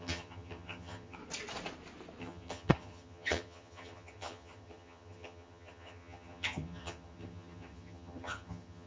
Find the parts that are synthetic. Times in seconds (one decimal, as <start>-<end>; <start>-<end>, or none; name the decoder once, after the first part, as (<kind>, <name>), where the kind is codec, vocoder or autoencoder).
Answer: 0.0-1.2 (vocoder, HiFi-GAN); 2.2-8.9